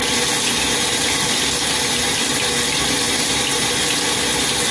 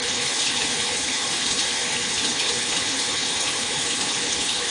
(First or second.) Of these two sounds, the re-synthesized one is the second